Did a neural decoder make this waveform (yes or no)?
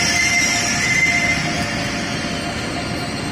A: no